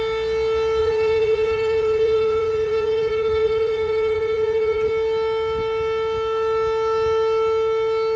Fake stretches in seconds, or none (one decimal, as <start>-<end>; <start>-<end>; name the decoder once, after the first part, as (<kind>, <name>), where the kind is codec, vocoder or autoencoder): 0.8-4.9 (vocoder, Vocos)

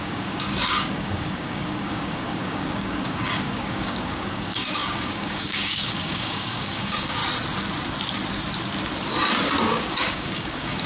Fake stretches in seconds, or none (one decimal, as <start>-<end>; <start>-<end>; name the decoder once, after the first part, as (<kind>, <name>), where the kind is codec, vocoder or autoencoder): 0.0-7.2 (codec, DAC); 9.6-10.9

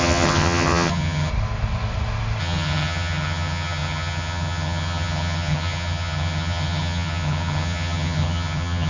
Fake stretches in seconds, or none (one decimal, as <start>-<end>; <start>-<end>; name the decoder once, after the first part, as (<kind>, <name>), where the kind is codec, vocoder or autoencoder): 0.0-1.3 (vocoder, HiFi-GAN); 2.4-8.9

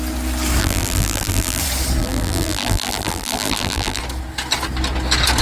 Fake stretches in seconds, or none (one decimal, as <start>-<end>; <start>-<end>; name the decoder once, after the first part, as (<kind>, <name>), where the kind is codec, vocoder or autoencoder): 0.6-1.6 (vocoder, BigVGAN v2); 2.0-4.0